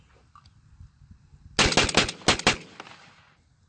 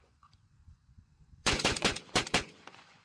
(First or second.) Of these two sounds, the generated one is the second